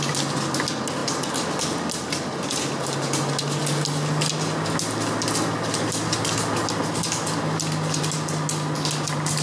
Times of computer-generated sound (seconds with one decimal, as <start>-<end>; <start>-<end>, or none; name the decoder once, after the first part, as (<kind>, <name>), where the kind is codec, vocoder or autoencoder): none